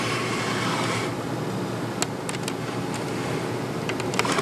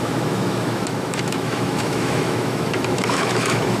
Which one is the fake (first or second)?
second